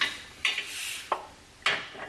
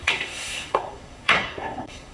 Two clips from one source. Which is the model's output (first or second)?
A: second